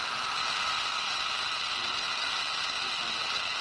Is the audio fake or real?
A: fake